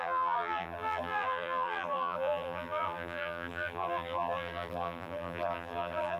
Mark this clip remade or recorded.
remade